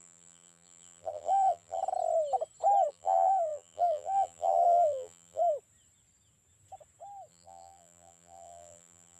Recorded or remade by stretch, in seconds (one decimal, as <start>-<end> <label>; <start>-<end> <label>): 0.0-1.8 remade; 1.8-2.9 recorded; 2.9-5.4 remade; 5.4-7.3 recorded; 7.3-9.2 remade